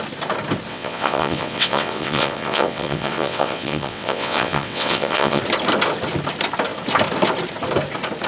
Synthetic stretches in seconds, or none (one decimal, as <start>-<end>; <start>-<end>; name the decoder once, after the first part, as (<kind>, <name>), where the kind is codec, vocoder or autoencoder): 0.7-5.4 (vocoder, WaveNeXt)